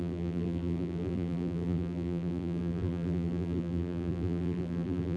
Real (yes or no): no